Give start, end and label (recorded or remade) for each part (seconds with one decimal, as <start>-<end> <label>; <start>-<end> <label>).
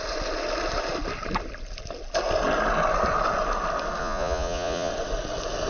0.0-4.0 recorded; 4.0-4.9 remade; 4.9-5.7 recorded